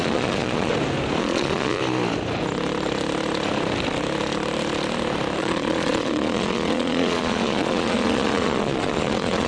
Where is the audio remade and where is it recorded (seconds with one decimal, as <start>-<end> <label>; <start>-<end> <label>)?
0.0-0.7 remade; 0.7-1.2 recorded; 1.2-1.8 remade; 1.8-5.4 recorded; 5.4-9.5 remade